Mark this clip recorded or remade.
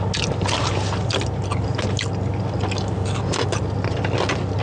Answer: recorded